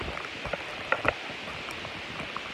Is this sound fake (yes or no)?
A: no